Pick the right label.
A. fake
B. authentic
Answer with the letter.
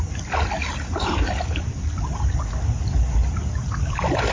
B